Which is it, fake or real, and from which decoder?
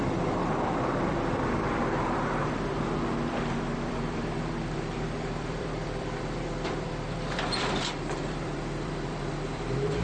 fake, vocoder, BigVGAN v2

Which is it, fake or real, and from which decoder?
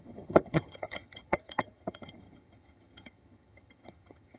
fake, vocoder, HiFi-GAN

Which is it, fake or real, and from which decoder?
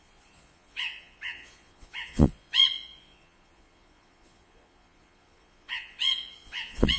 fake, vocoder, Vocos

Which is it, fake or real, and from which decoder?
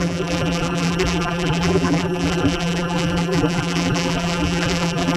fake, vocoder, BigVGAN v2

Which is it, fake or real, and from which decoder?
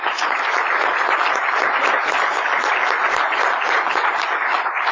real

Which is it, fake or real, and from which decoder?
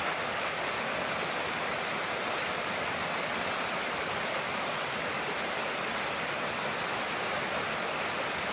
real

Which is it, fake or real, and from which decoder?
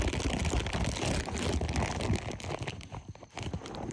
real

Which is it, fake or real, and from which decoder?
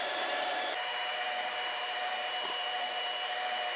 fake, vocoder, BigVGAN v2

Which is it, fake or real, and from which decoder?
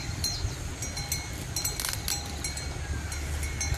real